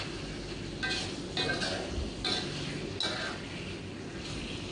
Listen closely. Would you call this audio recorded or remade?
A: recorded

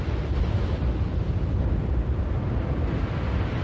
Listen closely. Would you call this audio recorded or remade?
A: recorded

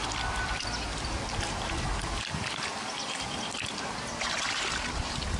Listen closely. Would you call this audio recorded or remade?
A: recorded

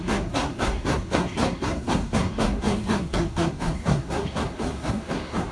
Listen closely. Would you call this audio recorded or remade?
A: remade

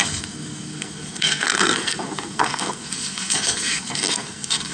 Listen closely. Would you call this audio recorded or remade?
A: remade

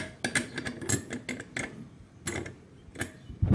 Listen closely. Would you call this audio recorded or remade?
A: recorded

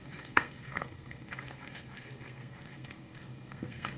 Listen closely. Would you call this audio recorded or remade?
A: remade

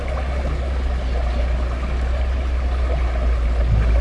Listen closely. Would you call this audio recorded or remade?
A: recorded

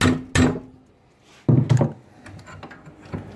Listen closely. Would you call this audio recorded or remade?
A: recorded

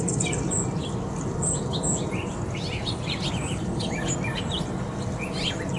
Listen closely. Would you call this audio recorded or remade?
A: recorded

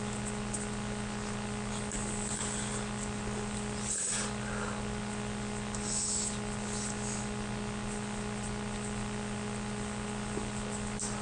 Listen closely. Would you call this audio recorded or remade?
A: recorded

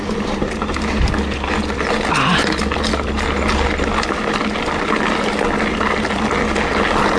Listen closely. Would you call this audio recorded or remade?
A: recorded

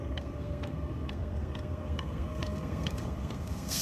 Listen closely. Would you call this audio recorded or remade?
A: remade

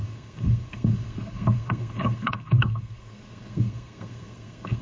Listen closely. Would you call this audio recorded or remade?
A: remade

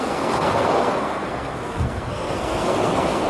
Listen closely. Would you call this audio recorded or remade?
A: remade